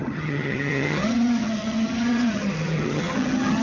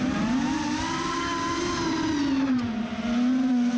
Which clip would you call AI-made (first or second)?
first